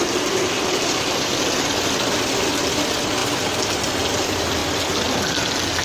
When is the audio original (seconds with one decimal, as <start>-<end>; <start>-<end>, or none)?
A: 0.0-5.8